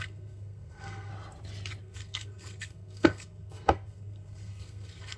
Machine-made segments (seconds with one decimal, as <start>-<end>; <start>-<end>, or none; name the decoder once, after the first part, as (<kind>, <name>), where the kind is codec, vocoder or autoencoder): 0.0-1.1 (codec, SNAC); 1.8-5.2